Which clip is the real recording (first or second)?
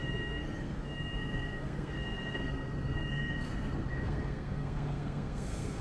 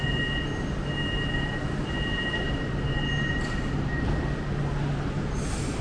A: second